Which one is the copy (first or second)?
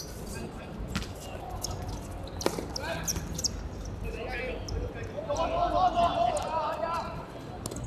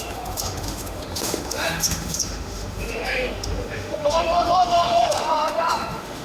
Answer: second